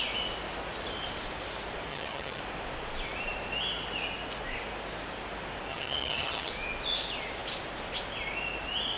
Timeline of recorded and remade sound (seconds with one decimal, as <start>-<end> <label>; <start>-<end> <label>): 0.0-1.9 recorded; 1.9-2.4 remade; 2.4-5.7 recorded; 5.7-6.5 remade; 6.5-9.0 recorded